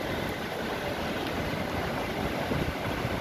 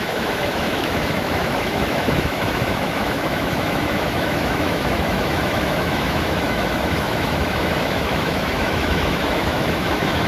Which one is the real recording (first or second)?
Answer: first